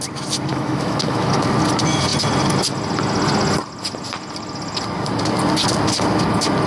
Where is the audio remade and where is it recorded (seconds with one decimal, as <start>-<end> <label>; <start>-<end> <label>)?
0.0-0.5 recorded; 0.5-1.3 remade; 1.3-6.7 recorded